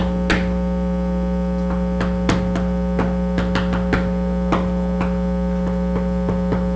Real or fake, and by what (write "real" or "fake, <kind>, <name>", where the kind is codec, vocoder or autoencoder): real